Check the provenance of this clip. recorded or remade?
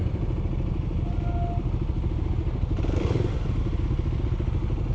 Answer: recorded